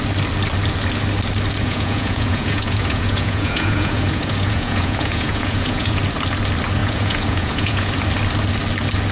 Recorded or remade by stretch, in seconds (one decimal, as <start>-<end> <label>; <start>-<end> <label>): 0.0-1.6 recorded; 1.6-6.0 remade; 6.0-6.8 recorded; 6.8-7.9 remade; 7.9-9.1 recorded